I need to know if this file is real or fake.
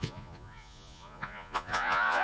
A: fake